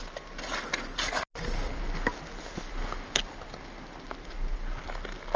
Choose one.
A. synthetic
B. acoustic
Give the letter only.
B